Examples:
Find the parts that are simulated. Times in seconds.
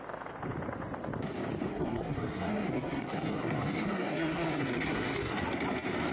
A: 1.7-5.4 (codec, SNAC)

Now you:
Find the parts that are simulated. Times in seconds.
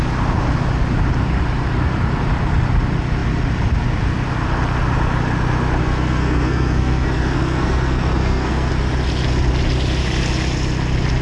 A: 5.8-8.7 (codec, SNAC)